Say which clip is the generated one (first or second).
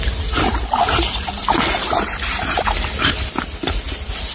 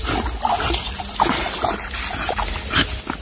first